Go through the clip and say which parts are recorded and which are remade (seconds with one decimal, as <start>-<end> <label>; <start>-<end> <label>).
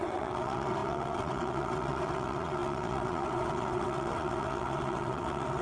0.0-5.6 remade